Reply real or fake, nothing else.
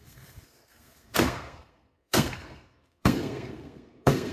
fake